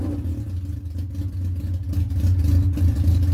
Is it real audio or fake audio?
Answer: real